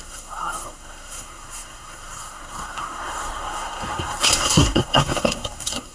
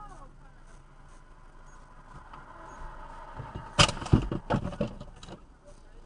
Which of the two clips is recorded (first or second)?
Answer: second